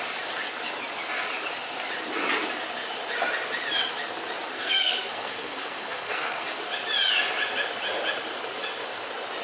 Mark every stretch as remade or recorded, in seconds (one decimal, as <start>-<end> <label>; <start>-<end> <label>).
0.0-4.5 recorded; 4.5-6.6 remade; 6.6-9.4 recorded